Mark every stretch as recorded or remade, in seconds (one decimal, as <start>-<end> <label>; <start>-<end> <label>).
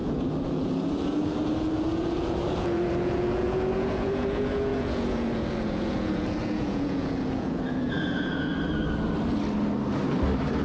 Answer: 0.0-8.5 remade; 8.5-10.6 recorded